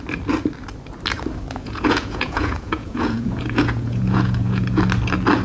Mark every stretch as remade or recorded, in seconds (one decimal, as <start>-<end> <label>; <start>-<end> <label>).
0.0-1.6 recorded; 1.6-4.8 remade; 4.8-5.4 recorded